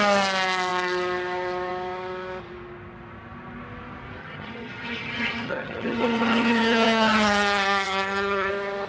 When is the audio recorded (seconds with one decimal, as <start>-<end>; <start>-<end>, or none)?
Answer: 0.0-4.2; 8.5-8.9